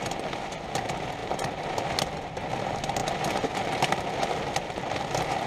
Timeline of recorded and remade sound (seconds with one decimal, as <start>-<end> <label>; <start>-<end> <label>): 0.0-5.5 recorded